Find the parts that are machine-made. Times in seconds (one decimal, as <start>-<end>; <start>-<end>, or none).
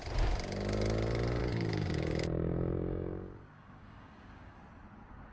1.4-4.6